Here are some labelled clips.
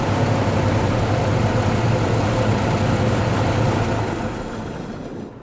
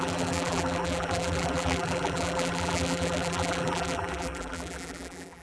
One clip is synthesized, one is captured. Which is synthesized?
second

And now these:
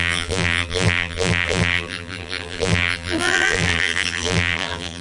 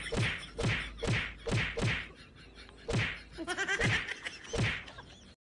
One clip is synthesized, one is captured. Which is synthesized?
first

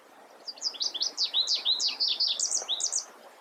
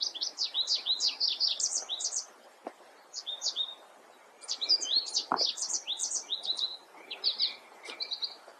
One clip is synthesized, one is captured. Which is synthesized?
second